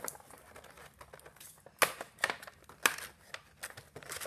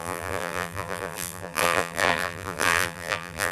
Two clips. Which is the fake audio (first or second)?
second